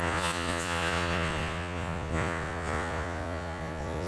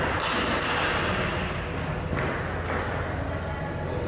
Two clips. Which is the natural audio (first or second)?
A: second